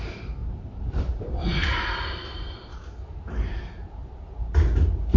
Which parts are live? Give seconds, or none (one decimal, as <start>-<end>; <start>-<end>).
0.0-0.4; 3.5-5.2